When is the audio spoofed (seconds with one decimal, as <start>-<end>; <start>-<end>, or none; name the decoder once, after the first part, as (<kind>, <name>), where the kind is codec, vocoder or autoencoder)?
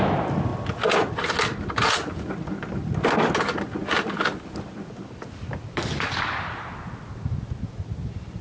none